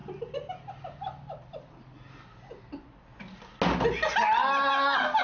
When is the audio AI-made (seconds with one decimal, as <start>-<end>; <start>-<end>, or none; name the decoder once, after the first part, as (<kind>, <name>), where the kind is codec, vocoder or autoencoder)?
none